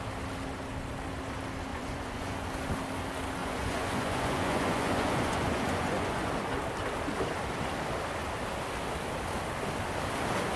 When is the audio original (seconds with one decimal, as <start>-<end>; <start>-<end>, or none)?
0.0-1.7; 2.5-3.4; 6.3-10.6